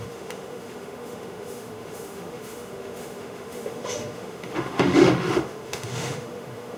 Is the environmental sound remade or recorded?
remade